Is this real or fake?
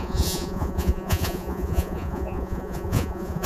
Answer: fake